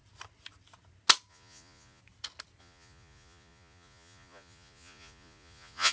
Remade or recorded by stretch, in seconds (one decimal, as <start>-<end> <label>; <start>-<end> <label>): 0.0-1.3 recorded; 1.3-2.0 remade; 2.0-2.6 recorded; 2.6-5.9 remade